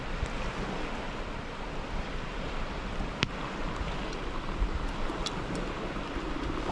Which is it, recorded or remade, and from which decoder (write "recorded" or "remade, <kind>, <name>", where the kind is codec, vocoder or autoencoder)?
recorded